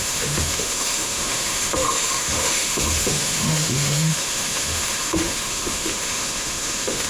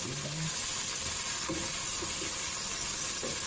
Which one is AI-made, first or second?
first